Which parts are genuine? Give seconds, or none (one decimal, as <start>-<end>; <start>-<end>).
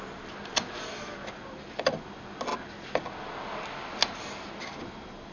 0.0-5.3